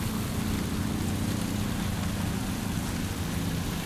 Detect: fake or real real